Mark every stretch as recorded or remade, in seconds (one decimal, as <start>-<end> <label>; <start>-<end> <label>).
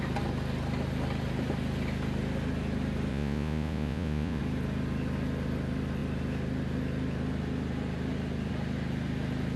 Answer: 0.0-3.1 recorded; 3.1-4.4 remade; 4.4-9.6 recorded